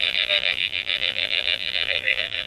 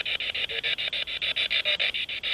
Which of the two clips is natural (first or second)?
second